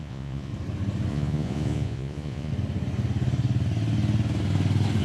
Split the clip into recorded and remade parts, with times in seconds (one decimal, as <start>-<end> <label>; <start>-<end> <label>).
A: 0.0-0.5 remade; 0.5-1.1 recorded; 1.1-2.5 remade; 2.5-5.0 recorded